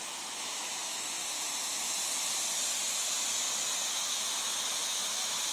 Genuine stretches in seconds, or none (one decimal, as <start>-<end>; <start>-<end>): 1.2-3.9